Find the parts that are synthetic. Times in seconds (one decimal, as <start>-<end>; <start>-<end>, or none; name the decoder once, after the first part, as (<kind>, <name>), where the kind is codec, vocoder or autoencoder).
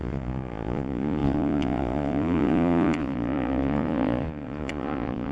0.0-5.3 (vocoder, Vocos)